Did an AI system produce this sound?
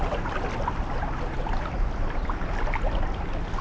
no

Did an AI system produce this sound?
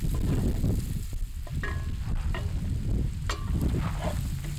no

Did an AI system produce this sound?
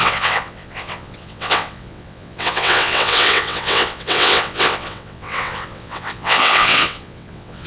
yes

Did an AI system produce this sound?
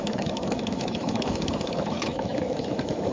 yes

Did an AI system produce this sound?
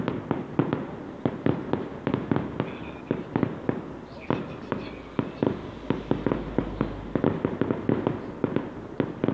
no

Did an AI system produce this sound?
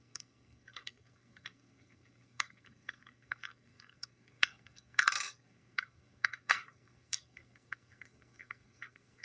yes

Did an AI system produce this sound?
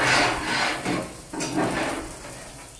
no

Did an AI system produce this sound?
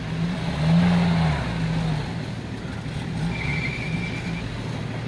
no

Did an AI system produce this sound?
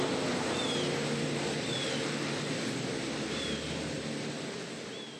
no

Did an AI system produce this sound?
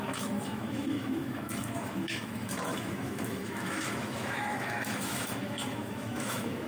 yes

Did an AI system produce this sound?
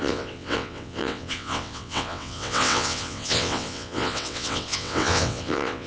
yes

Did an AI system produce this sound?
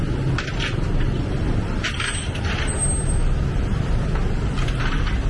no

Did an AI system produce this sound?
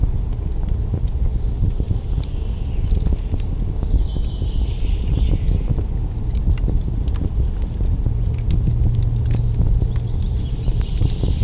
no